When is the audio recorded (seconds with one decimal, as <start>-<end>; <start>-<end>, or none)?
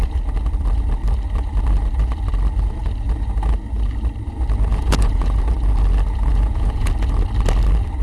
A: 0.0-4.7; 5.4-6.3; 6.9-8.0